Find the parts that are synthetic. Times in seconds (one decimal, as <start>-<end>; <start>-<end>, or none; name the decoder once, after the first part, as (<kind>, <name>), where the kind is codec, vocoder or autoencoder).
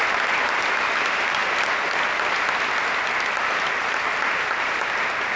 none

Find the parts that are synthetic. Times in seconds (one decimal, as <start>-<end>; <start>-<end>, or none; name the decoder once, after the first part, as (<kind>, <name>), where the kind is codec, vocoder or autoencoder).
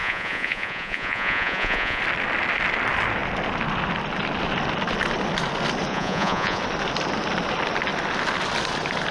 0.0-2.0 (vocoder, Vocos); 5.9-6.6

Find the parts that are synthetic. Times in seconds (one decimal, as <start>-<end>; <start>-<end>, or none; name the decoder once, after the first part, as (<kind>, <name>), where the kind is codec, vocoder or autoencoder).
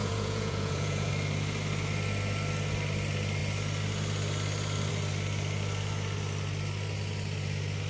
0.0-1.1 (vocoder, Vocos)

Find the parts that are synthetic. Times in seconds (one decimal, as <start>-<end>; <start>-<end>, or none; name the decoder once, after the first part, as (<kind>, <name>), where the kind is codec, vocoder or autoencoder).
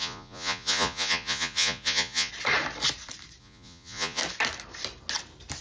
0.0-2.3 (vocoder, Vocos); 3.4-4.2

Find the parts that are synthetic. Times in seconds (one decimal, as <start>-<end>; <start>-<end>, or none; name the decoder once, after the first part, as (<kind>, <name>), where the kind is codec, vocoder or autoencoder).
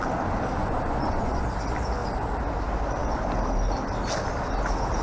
0.6-1.4 (vocoder, Vocos)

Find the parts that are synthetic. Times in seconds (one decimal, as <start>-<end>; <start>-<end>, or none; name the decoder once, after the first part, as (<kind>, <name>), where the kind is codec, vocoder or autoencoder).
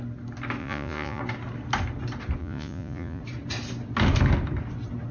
0.6-1.2 (vocoder, Vocos); 2.4-3.2